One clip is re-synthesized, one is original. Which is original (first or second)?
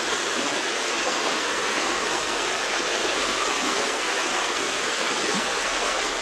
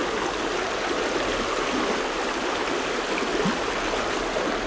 second